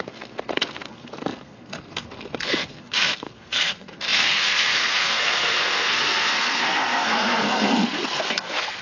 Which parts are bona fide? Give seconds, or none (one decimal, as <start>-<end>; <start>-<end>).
none